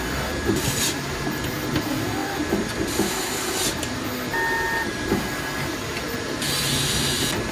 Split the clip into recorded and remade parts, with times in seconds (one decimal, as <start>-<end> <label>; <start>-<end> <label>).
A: 0.0-7.5 recorded

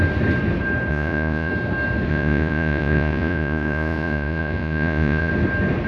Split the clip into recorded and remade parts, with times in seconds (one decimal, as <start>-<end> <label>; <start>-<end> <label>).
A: 0.0-0.9 recorded; 0.9-1.5 remade; 1.5-2.1 recorded; 2.1-5.3 remade; 5.3-5.9 recorded

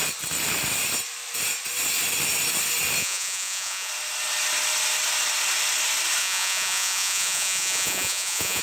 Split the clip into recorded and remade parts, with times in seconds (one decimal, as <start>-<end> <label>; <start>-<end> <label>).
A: 0.0-3.0 recorded; 3.0-3.9 remade; 3.9-6.2 recorded; 6.2-8.6 remade

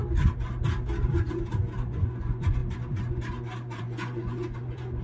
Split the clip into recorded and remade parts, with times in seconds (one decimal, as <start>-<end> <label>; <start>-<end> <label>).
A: 0.0-1.9 recorded; 1.9-2.6 remade; 2.6-3.8 recorded; 3.8-5.0 remade

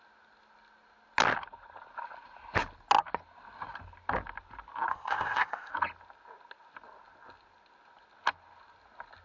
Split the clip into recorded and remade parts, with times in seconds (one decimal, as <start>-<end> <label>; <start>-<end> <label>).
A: 0.0-4.9 recorded; 4.9-5.7 remade; 5.7-9.2 recorded

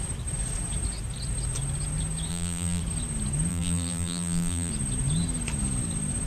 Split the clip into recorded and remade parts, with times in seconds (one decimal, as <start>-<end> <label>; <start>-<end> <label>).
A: 0.0-2.3 recorded; 2.3-2.8 remade; 2.8-3.5 recorded; 3.5-4.7 remade; 4.7-6.3 recorded

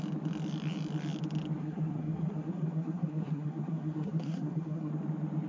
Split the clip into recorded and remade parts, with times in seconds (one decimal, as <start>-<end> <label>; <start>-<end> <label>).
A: 0.0-1.6 recorded; 1.6-4.9 remade; 4.9-5.5 recorded

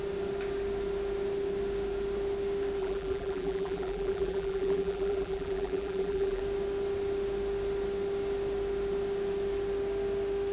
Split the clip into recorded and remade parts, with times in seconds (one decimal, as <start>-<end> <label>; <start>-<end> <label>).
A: 0.0-2.8 recorded; 2.8-6.4 remade; 6.4-10.5 recorded